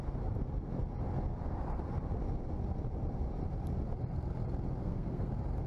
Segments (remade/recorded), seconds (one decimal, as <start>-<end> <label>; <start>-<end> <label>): 0.0-4.8 recorded; 4.8-5.3 remade; 5.3-5.7 recorded